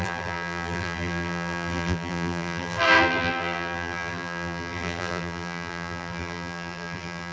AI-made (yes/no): yes